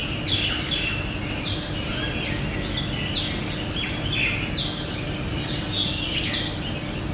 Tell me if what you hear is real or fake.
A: real